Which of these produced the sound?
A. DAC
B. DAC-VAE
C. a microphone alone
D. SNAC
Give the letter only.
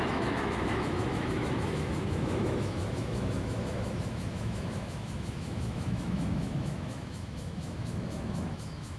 B